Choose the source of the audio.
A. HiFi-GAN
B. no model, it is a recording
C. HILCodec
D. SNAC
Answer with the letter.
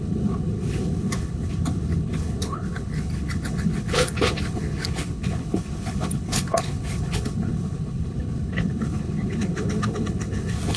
C